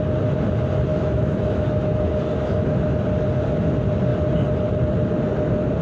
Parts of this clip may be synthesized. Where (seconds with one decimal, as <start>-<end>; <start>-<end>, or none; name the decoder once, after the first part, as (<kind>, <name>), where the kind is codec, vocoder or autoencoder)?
0.9-3.0 (autoencoder, DAC-VAE)